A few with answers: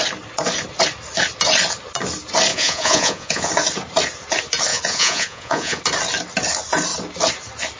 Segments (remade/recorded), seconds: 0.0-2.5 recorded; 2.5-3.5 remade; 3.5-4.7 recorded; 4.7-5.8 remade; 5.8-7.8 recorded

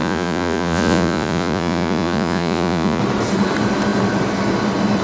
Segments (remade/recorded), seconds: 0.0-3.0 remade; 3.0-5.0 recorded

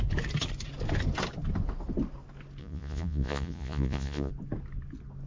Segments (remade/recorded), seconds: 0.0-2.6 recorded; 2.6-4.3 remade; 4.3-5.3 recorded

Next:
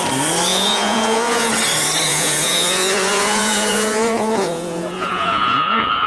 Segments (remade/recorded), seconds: 0.0-0.5 recorded; 0.5-1.5 remade; 1.5-2.1 recorded; 2.1-6.1 remade

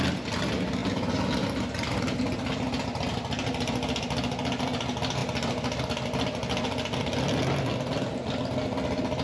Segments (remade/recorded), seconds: 0.0-9.2 recorded